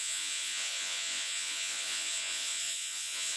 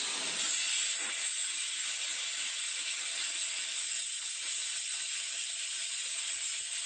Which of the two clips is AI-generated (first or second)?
first